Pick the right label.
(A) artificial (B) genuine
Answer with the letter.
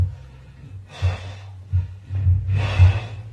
B